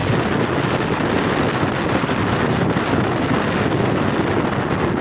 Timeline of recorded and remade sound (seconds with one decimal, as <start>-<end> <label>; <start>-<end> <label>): 0.0-5.0 recorded